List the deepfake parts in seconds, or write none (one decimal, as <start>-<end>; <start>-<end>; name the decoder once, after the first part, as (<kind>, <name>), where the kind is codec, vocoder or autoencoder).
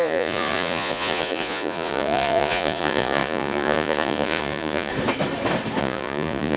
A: 0.0-4.9 (vocoder, Vocos); 5.8-6.6